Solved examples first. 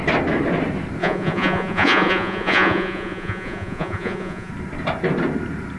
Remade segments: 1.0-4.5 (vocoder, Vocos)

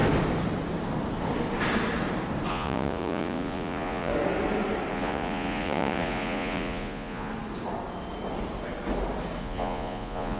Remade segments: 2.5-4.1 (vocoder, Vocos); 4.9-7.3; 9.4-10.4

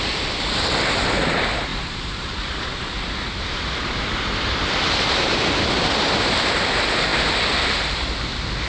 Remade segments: 1.7-5.4 (vocoder, BigVGAN v2)

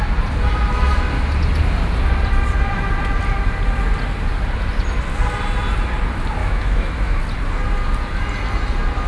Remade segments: 6.4-7.2 (autoencoder, DAC-VAE)

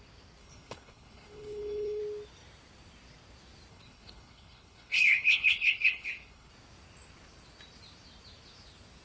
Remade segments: 0.4-2.0 (codec, HILCodec); 3.7-6.5

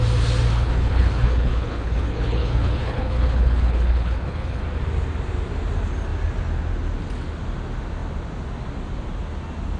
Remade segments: 0.5-4.6 (codec, HILCodec)

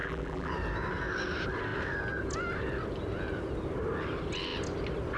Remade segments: 0.0-0.5 (vocoder, BigVGAN v2)

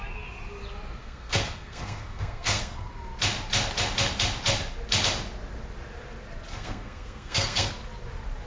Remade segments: 1.0-2.9 (codec, SNAC); 6.5-7.7